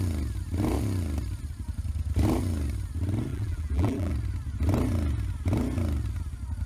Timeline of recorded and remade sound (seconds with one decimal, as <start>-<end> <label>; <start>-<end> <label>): 0.0-3.3 recorded; 3.3-4.1 remade; 4.1-6.7 recorded